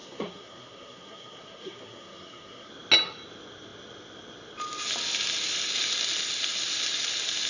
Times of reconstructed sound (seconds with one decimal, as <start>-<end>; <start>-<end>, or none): 0.0-2.7

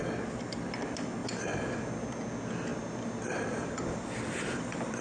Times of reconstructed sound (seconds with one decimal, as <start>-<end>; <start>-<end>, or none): 1.2-1.8; 2.7-4.6